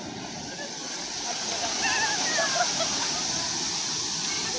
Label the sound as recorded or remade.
recorded